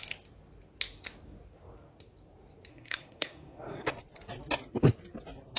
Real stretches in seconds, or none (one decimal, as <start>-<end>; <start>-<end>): 0.0-2.7; 3.9-5.6